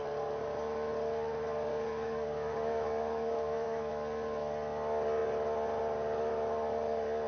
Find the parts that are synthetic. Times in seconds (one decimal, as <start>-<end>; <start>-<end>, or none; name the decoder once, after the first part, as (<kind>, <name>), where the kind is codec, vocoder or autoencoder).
1.7-3.9 (codec, DAC)